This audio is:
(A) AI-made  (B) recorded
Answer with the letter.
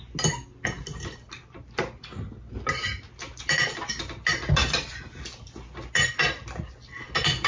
B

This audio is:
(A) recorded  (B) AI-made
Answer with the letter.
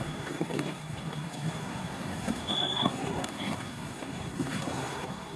B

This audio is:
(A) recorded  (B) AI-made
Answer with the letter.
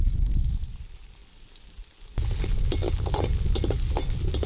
A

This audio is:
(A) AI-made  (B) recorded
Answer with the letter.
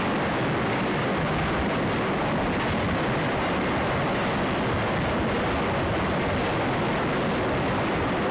B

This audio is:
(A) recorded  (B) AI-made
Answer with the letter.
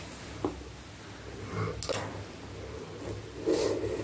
A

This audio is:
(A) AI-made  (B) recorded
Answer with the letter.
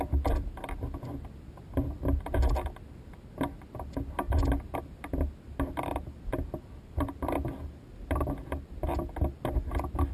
B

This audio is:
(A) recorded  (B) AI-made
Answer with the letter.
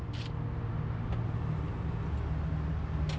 A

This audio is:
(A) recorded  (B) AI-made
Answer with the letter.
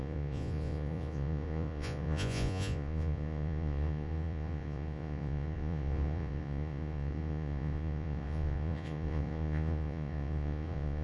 B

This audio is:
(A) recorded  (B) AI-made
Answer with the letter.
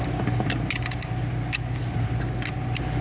A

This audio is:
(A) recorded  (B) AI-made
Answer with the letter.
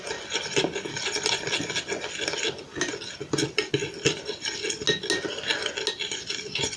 A